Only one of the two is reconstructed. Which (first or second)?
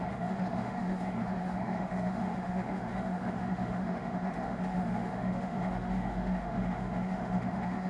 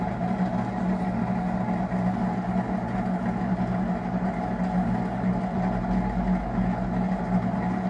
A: first